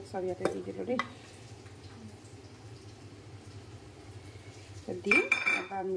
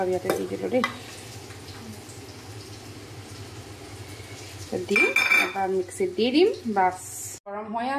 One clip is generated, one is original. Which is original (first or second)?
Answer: second